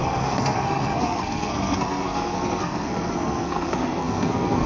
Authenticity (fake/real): fake